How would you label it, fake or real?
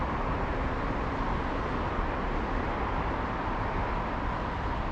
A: real